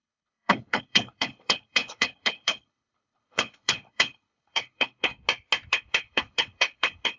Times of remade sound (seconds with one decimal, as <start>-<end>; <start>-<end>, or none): 0.0-5.1; 5.7-7.2